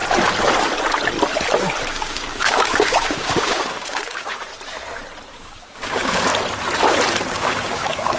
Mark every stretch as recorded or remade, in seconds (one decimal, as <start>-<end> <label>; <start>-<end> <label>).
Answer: 0.0-1.9 recorded; 1.9-4.5 remade; 4.5-5.3 recorded; 5.3-6.3 remade; 6.3-7.3 recorded; 7.3-8.2 remade